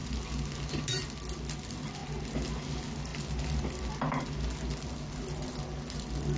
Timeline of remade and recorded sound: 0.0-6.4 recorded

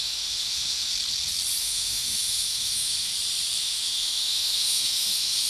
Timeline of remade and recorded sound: 0.0-0.9 remade; 0.9-1.6 recorded; 1.6-3.1 remade; 3.1-3.6 recorded; 3.6-5.5 remade

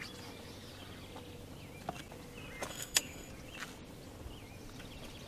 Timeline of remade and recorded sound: 0.0-2.7 recorded; 2.7-3.3 remade; 3.3-5.3 recorded

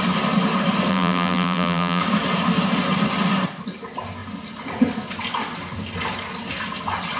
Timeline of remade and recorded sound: 0.0-0.9 recorded; 0.9-2.0 remade; 2.0-7.2 recorded